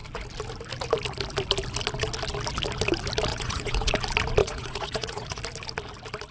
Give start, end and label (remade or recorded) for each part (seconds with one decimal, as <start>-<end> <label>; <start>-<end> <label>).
0.0-3.3 recorded; 3.3-3.9 remade; 3.9-4.4 recorded; 4.4-5.4 remade; 5.4-6.3 recorded